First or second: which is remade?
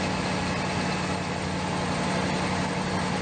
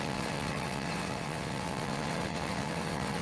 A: second